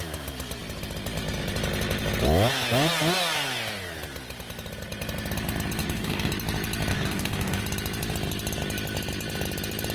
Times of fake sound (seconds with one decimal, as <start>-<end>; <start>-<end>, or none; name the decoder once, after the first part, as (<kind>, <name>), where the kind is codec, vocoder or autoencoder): 5.8-6.3 (codec, DAC); 6.9-7.6